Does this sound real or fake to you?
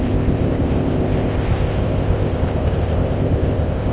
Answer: fake